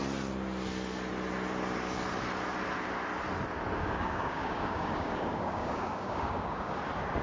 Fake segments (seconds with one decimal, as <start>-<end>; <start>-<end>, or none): 3.8-6.8